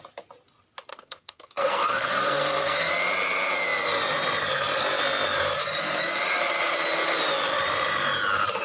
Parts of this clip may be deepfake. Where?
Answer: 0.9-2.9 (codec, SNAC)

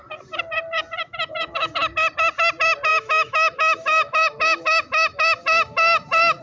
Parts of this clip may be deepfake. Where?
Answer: 1.0-1.7 (autoencoder, DAC-VAE); 2.9-6.4

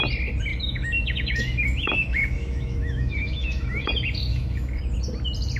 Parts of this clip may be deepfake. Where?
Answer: 0.5-3.9 (autoencoder, DAC-VAE); 4.3-4.8

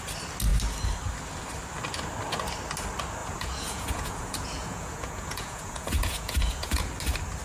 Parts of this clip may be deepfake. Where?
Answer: 3.2-6.9 (vocoder, Vocos)

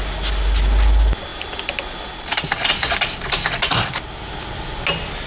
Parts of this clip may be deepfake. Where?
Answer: none